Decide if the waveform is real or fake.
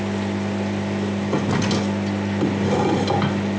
real